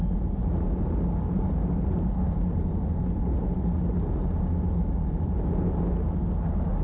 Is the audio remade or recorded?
recorded